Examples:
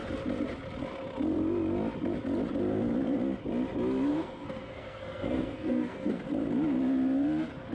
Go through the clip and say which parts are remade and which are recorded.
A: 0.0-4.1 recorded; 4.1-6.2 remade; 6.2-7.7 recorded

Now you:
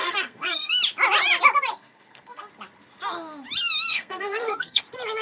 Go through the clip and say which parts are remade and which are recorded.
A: 0.0-0.7 remade; 0.7-1.7 recorded; 1.7-2.5 remade; 2.5-3.9 recorded; 3.9-4.8 remade; 4.8-5.2 recorded

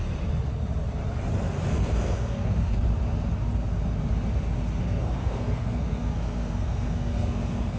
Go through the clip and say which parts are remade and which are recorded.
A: 0.0-1.7 recorded; 1.7-2.8 remade; 2.8-4.8 recorded; 4.8-7.8 remade